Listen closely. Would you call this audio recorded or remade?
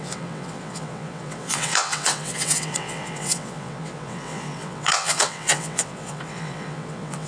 remade